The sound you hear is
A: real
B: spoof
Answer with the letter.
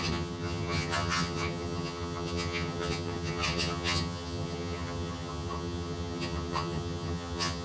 B